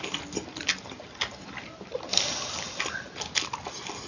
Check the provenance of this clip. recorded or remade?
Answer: recorded